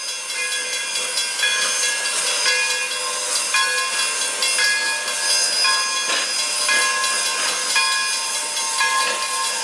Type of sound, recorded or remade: recorded